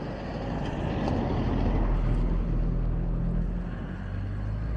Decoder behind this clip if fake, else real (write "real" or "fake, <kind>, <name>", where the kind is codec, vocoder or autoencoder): real